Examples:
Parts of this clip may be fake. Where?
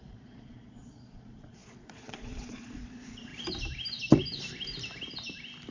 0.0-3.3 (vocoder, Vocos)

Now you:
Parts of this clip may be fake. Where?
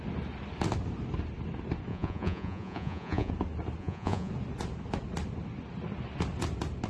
1.9-3.3 (vocoder, Vocos); 3.8-4.3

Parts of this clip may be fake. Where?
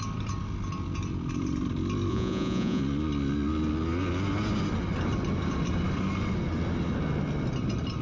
2.1-2.8 (vocoder, Vocos)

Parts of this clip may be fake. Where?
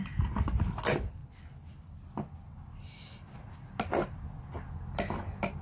none